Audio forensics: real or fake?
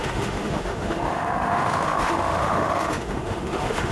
fake